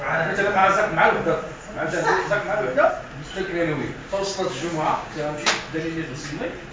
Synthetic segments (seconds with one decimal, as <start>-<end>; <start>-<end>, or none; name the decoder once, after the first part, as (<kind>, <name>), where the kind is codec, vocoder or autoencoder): 4.0-5.5 (codec, DAC)